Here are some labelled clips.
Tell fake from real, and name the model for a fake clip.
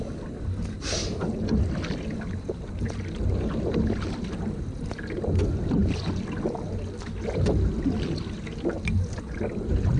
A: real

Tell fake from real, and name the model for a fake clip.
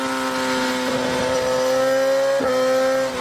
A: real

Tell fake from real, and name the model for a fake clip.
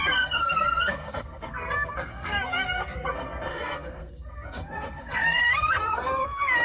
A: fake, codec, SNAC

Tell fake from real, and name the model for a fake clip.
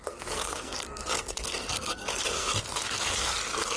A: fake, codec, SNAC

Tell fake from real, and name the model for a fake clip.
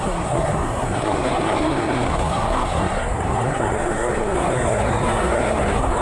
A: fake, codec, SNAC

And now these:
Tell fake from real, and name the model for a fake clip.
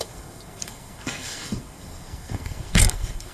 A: fake, codec, SNAC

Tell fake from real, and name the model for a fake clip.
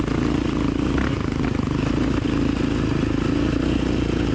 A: real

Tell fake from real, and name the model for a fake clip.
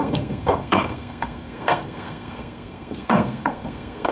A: fake, codec, SNAC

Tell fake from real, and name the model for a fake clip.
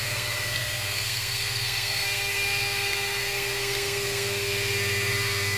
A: fake, codec, SNAC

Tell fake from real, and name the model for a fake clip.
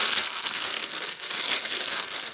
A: fake, codec, SNAC